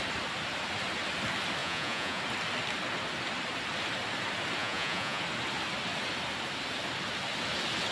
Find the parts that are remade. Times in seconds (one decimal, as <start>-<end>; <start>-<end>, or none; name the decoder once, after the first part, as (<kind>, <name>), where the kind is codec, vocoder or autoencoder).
1.6-2.2 (vocoder, Vocos); 4.6-5.2